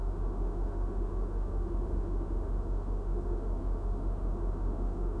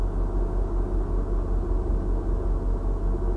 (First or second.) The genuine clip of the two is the second